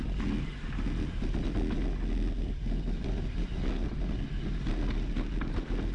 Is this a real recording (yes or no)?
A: yes